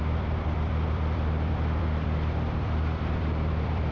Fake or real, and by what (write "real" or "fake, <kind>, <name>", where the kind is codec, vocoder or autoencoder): fake, vocoder, BigVGAN v2